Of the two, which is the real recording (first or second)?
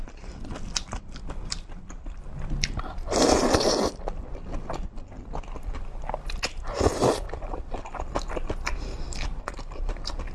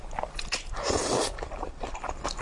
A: first